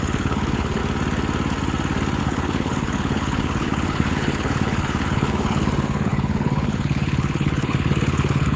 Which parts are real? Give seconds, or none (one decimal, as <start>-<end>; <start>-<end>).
0.8-2.2